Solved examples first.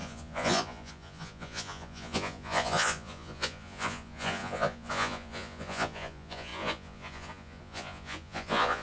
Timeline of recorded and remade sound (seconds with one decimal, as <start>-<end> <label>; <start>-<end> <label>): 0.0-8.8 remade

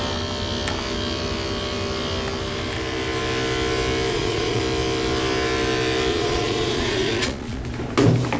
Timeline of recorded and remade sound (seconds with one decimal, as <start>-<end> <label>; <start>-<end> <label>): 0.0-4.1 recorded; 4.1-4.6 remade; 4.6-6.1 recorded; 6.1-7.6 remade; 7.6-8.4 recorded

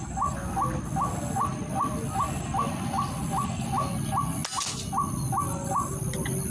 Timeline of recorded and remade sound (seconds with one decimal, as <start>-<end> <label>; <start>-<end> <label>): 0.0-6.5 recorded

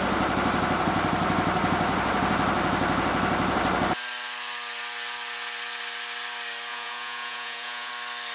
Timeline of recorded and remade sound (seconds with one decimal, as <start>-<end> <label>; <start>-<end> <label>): 0.0-6.7 recorded; 6.7-7.9 remade; 7.9-8.3 recorded

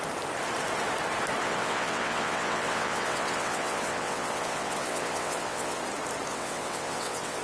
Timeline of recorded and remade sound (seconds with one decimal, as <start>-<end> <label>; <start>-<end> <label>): 0.0-1.4 recorded; 1.4-5.8 remade; 5.8-6.3 recorded; 6.3-7.4 remade